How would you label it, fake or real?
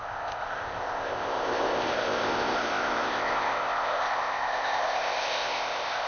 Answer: fake